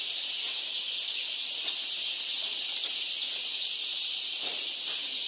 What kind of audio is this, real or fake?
real